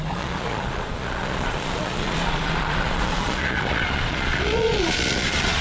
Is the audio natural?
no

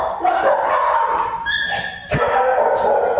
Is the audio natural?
yes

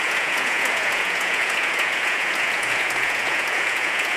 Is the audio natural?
no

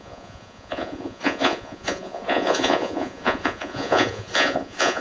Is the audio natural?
no